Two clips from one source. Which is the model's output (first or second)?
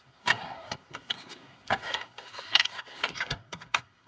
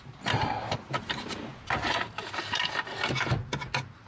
first